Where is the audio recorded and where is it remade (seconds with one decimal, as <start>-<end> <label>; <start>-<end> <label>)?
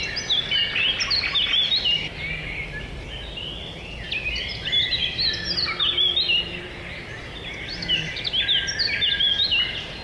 0.0-10.0 recorded